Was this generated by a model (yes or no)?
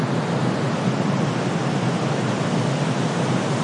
no